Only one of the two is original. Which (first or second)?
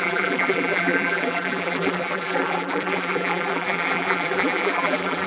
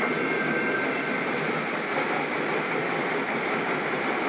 second